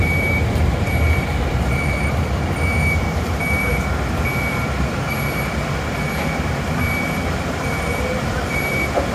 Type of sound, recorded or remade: remade